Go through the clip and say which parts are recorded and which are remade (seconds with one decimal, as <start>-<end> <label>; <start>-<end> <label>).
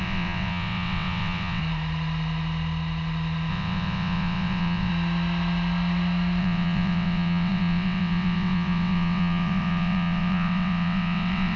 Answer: 0.0-1.6 remade; 1.6-3.5 recorded; 3.5-4.9 remade; 4.9-6.4 recorded; 6.4-11.6 remade